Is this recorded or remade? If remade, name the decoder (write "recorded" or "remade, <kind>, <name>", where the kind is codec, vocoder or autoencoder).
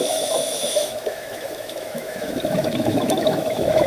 remade, autoencoder, DAC-VAE